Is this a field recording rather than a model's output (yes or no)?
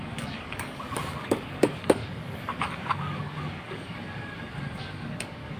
no